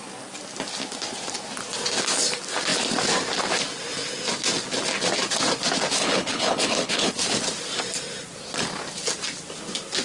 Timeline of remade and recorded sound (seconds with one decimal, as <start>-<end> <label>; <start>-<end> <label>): 0.0-6.0 recorded; 6.0-7.1 remade; 7.1-10.0 recorded